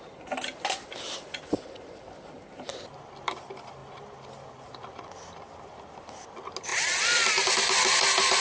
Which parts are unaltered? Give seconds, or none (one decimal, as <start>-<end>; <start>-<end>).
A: 0.0-6.7; 7.9-8.4